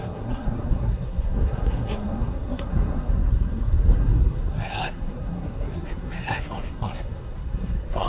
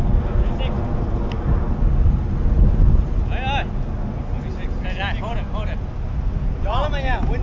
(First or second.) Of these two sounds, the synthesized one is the first